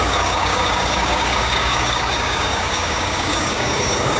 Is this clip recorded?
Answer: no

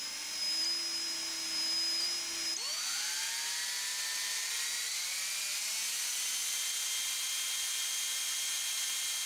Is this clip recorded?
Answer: yes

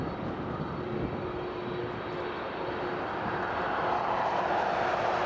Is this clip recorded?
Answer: yes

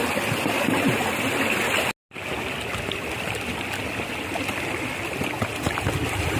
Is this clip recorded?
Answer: yes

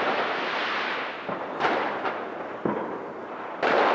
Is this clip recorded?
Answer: yes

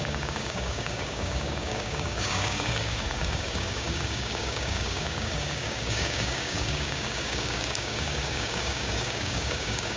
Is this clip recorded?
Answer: no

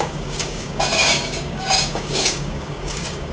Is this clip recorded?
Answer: no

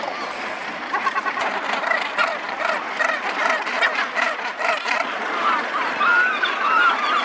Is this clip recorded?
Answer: yes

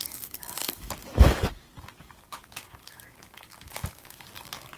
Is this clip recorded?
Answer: no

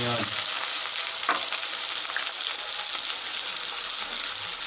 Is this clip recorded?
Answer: yes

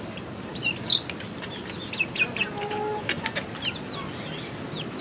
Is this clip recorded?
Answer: yes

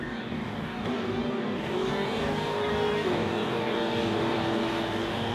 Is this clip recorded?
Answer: no